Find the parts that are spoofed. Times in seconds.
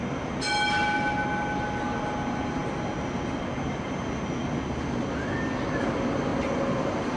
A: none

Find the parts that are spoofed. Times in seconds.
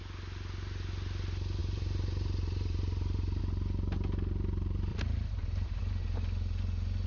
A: 1.6-3.4 (vocoder, BigVGAN v2); 4.9-5.8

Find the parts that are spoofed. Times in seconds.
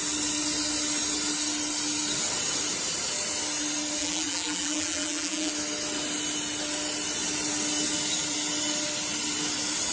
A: 4.0-5.5 (vocoder, BigVGAN v2)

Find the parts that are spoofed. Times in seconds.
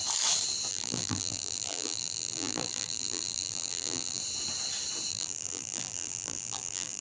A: 0.7-4.2 (vocoder, BigVGAN v2); 5.1-7.0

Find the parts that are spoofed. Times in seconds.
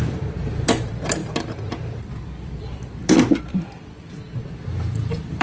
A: 0.0-5.4 (vocoder, BigVGAN v2)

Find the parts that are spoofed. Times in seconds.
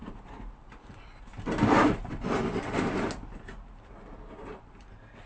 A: none